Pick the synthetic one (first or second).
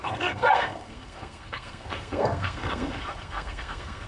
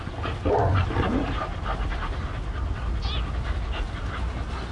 first